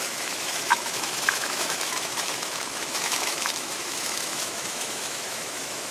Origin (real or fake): fake